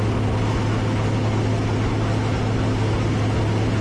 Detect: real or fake real